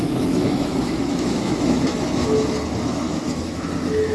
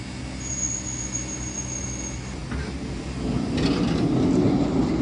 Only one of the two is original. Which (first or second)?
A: second